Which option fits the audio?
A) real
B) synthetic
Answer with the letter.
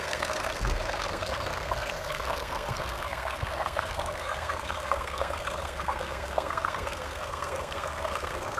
B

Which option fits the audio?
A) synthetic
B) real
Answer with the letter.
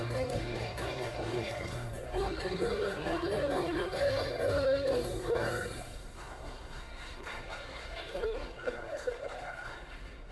A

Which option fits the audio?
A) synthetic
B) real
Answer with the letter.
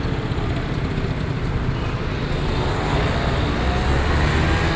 B